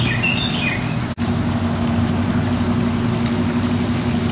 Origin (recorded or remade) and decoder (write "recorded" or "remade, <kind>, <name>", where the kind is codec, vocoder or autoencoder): recorded